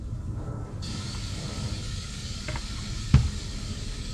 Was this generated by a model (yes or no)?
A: yes